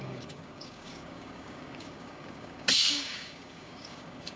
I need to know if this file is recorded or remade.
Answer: remade